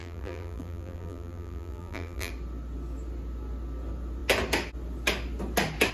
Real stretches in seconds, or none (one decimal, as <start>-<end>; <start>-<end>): 2.3-5.9